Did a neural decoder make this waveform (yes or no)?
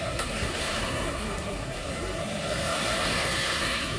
yes